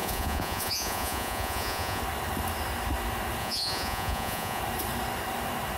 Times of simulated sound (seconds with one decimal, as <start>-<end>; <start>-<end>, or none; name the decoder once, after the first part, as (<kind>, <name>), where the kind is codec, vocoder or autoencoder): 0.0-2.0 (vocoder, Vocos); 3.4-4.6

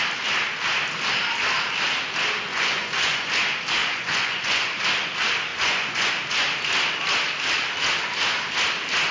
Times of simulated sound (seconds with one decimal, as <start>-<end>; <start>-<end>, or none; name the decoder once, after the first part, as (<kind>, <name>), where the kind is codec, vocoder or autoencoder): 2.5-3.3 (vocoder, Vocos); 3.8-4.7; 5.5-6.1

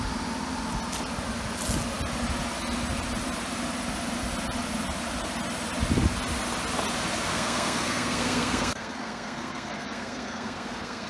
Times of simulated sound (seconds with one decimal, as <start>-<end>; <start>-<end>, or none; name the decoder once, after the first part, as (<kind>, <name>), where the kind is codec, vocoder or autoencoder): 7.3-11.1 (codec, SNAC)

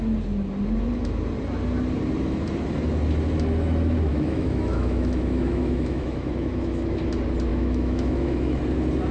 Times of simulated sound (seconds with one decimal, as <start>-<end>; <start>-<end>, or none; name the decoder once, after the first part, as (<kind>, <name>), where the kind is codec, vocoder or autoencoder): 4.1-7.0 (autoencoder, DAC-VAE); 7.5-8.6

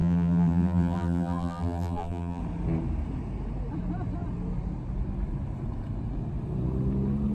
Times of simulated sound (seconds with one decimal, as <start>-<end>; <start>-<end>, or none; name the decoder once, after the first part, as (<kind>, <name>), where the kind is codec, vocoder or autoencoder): 0.0-2.4 (vocoder, BigVGAN v2)